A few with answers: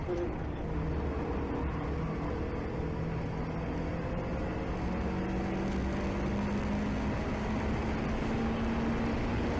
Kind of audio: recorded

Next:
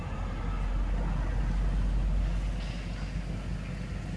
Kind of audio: recorded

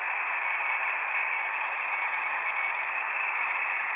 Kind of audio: recorded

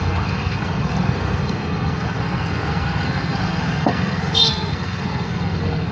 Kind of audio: remade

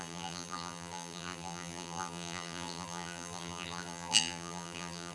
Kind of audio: remade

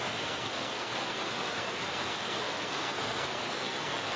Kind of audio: remade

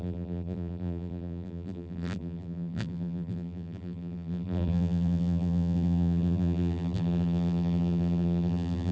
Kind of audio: remade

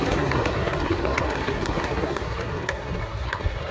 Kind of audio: remade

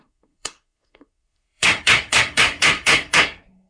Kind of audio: remade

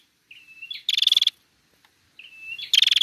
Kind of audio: recorded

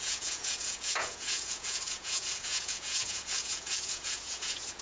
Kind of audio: remade